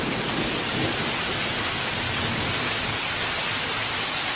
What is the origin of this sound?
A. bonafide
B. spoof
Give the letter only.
A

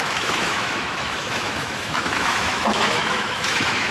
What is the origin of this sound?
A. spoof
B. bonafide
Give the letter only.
A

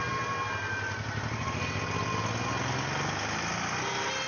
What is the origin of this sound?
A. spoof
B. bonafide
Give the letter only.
B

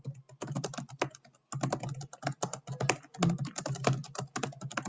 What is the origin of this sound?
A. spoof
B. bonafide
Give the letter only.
B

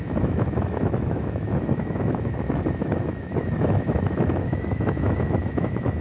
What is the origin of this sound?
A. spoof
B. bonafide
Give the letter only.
A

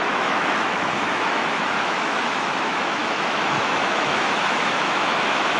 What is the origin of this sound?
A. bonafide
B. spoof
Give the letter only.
B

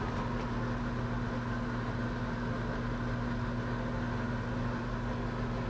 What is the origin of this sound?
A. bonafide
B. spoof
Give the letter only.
A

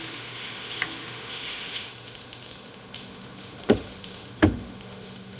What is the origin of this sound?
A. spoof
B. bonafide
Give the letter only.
A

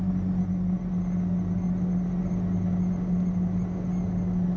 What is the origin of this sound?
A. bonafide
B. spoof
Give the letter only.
A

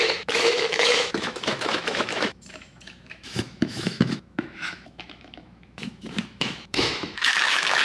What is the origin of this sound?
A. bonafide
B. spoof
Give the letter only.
B